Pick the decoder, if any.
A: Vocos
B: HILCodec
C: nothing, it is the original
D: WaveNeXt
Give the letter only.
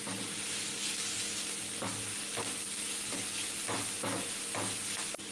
C